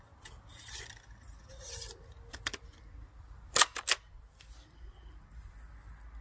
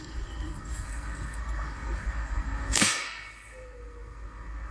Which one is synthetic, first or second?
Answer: second